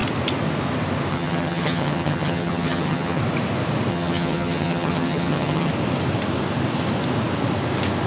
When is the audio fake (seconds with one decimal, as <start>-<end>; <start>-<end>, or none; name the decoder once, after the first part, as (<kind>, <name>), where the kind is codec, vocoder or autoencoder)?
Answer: 1.1-3.2 (vocoder, HiFi-GAN); 3.9-5.7